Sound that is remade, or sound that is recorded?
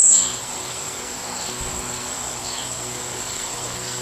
remade